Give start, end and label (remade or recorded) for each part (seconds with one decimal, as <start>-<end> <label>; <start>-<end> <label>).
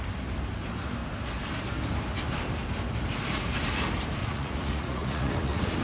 0.0-4.2 recorded; 4.2-5.8 remade